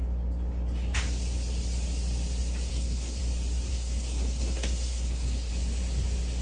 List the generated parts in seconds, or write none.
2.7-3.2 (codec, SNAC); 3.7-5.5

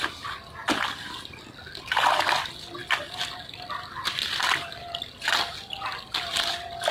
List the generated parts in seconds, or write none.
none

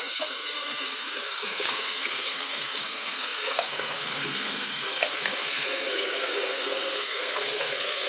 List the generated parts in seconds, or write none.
0.0-8.1 (codec, SNAC)

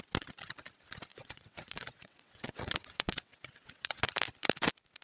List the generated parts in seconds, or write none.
1.1-4.1 (vocoder, WaveNeXt)

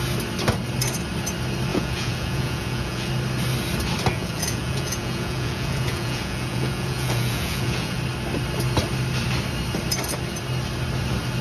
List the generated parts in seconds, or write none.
1.7-3.1 (vocoder, Vocos); 4.1-8.0

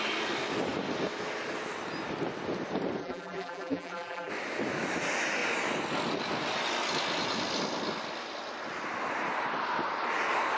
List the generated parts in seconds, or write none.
3.0-4.3 (vocoder, BigVGAN v2)

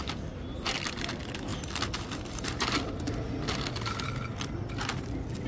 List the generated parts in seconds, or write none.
0.0-1.5 (vocoder, BigVGAN v2); 4.8-5.5

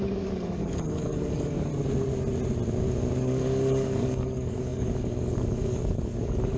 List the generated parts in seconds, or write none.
0.0-1.7 (codec, DAC); 3.2-6.6